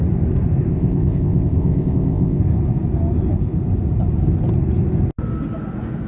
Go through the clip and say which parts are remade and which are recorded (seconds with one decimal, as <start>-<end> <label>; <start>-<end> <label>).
0.0-0.7 recorded; 0.7-2.4 remade; 2.4-6.1 recorded